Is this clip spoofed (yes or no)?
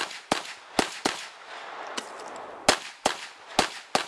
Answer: no